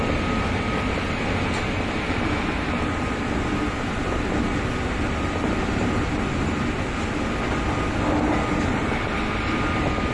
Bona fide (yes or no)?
yes